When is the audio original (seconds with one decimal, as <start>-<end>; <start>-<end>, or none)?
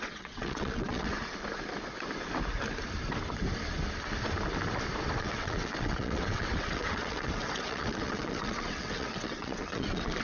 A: 1.1-5.2